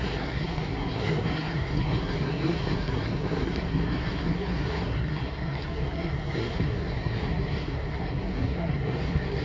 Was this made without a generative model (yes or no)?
no